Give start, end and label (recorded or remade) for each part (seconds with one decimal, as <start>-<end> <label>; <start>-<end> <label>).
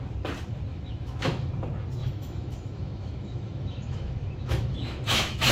0.0-0.7 recorded; 0.7-1.5 remade; 1.5-2.0 recorded; 2.0-5.5 remade